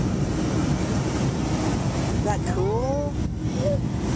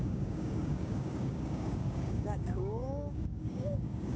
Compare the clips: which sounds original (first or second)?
first